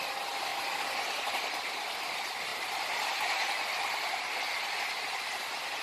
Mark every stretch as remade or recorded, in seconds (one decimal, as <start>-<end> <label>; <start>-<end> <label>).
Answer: 0.0-5.8 recorded